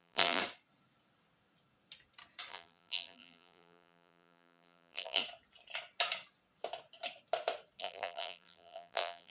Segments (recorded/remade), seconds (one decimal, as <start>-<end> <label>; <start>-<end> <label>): 0.0-0.4 remade; 0.4-2.5 recorded; 2.5-5.2 remade; 5.2-7.8 recorded; 7.8-9.3 remade